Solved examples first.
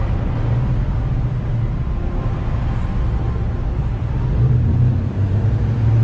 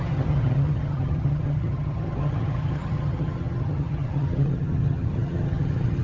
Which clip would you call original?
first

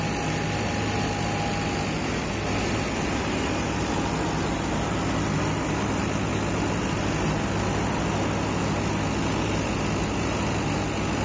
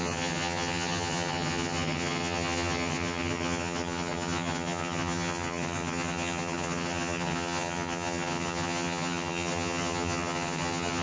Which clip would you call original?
first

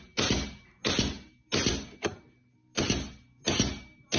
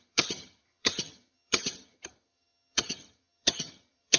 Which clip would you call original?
first